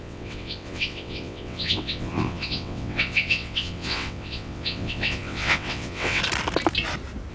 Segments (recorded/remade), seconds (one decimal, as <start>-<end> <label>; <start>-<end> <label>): 0.0-6.2 remade; 6.2-7.3 recorded